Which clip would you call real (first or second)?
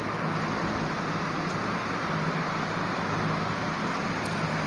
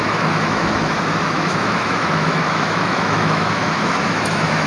first